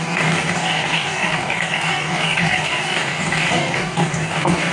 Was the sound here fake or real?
fake